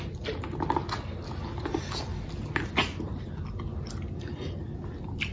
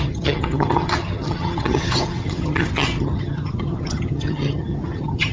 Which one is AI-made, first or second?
second